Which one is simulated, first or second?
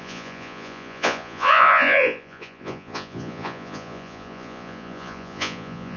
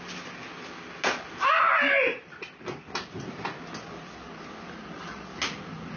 first